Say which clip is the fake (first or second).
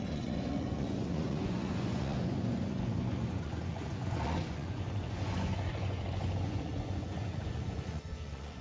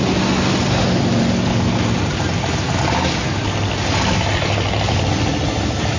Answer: first